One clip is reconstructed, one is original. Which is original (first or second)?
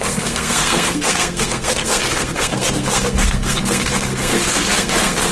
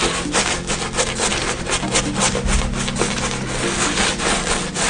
second